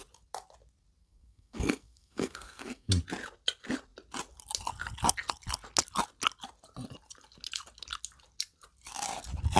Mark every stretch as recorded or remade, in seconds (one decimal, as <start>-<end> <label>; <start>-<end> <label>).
0.0-1.0 recorded; 1.0-2.9 remade; 2.9-9.6 recorded